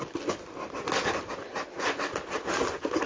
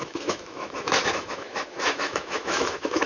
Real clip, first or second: first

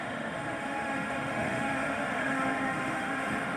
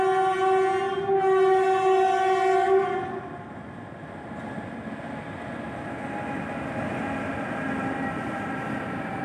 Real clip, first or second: second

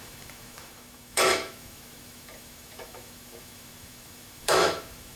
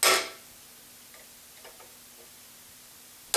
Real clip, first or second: second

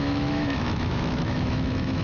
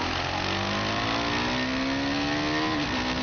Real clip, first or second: second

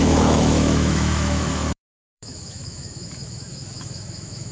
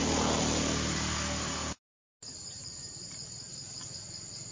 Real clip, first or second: second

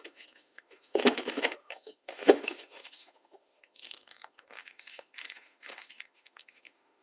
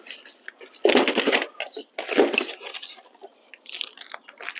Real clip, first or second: second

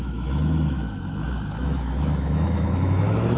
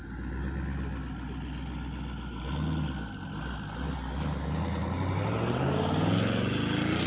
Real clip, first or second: second